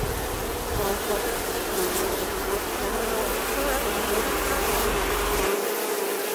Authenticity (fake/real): real